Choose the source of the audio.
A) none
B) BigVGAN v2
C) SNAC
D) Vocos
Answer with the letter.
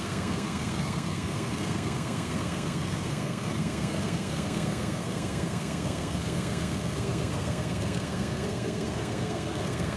C